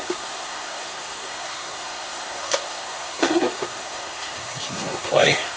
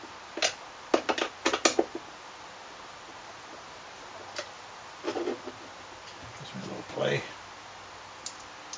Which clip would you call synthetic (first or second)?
first